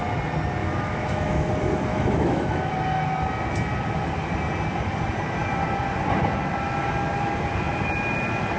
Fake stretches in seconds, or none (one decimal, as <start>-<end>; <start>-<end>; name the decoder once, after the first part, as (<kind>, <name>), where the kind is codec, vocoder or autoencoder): 0.6-1.5 (autoencoder, DAC-VAE); 1.9-2.7